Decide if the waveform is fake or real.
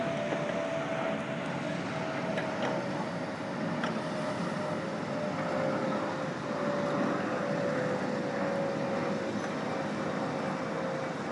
real